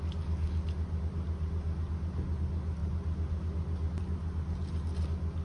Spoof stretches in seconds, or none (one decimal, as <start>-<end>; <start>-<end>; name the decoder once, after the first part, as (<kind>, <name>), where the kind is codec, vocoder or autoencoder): none